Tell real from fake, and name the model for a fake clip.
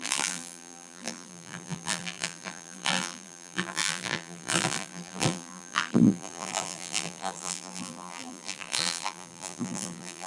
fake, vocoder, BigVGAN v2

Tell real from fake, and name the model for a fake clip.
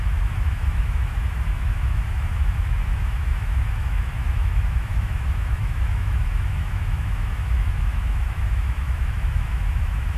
fake, autoencoder, DAC-VAE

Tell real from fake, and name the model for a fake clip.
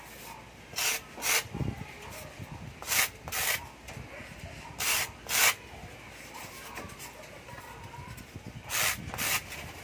real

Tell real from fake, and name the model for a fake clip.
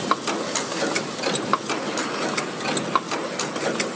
real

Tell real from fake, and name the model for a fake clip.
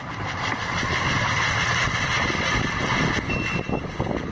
real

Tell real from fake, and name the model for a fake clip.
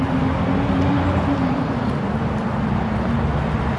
real